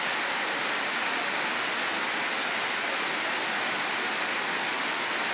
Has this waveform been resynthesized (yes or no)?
no